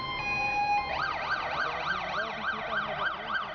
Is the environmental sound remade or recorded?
recorded